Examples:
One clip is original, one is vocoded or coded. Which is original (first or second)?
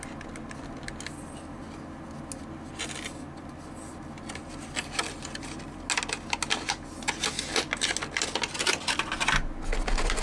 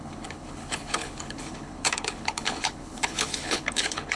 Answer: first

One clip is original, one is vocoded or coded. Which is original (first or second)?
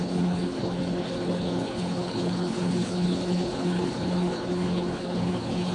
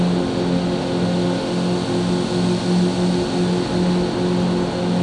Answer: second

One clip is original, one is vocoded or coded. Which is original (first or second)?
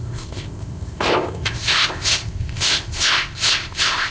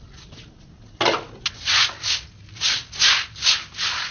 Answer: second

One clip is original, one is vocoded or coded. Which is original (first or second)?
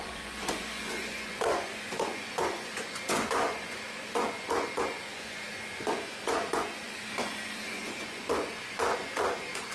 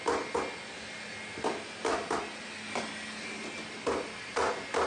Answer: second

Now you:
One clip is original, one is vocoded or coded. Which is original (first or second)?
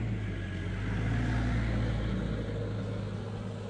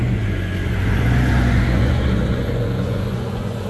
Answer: first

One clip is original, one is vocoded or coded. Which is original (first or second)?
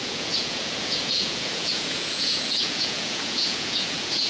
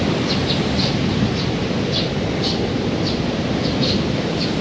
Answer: second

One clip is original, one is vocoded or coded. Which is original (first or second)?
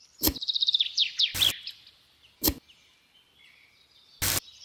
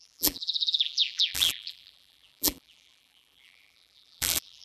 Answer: first